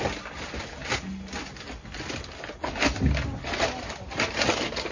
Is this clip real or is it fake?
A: real